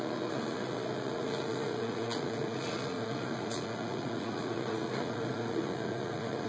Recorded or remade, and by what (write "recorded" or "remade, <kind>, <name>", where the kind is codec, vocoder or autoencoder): remade, vocoder, Vocos